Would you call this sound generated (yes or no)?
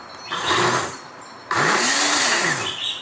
yes